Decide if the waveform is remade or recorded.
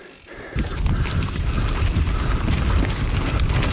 recorded